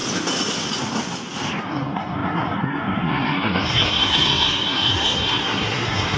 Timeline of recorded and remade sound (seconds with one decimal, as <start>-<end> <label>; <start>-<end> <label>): 0.0-1.6 recorded; 1.6-6.2 remade